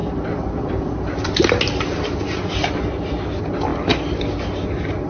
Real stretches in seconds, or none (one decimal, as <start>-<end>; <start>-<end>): 0.0-5.1